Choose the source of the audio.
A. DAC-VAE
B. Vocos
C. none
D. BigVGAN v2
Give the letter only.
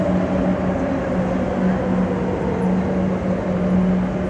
C